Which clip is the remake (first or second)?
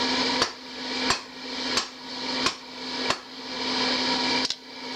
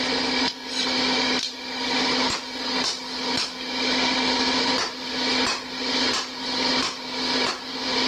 second